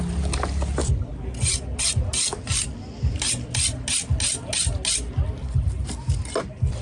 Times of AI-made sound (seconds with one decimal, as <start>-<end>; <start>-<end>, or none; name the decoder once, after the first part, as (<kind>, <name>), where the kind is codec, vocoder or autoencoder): none